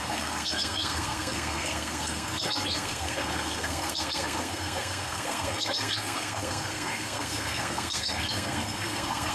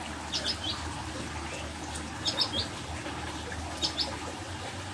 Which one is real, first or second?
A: second